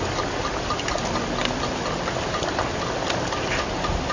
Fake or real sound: real